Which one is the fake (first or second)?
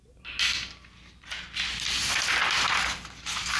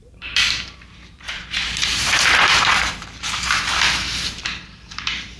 second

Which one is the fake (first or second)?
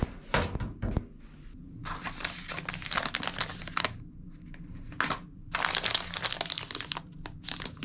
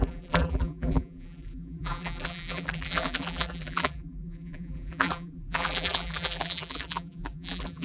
second